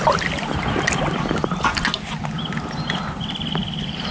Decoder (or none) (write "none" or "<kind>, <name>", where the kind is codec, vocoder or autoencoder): none